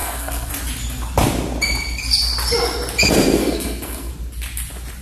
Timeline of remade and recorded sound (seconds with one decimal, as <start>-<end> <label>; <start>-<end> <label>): 0.0-0.5 remade; 0.5-3.4 recorded; 3.4-4.1 remade; 4.1-5.0 recorded

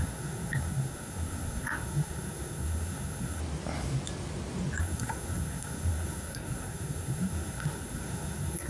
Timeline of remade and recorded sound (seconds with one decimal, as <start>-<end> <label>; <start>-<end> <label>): 0.0-3.4 remade; 3.4-4.8 recorded; 4.8-8.7 remade